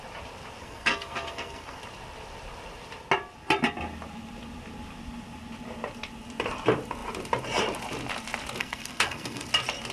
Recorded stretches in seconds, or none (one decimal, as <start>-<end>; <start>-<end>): 0.0-0.6; 1.8-8.6; 9.5-9.9